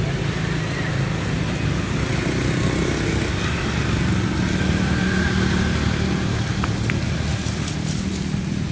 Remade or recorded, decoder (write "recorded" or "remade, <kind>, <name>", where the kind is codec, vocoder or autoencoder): recorded